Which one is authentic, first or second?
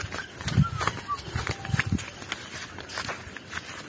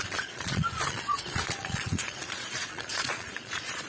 first